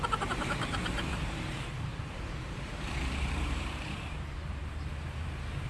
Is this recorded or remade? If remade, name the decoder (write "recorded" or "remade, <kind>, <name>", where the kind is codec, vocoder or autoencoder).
remade, vocoder, BigVGAN v2